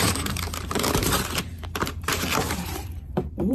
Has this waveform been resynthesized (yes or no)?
yes